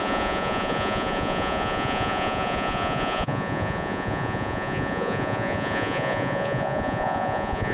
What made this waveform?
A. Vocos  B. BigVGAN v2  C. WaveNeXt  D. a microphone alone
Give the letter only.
A